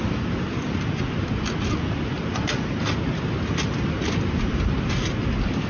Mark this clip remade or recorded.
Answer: recorded